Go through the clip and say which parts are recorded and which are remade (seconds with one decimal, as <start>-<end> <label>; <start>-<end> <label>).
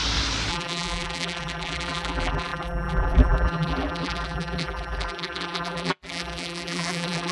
0.0-0.5 recorded; 0.5-7.3 remade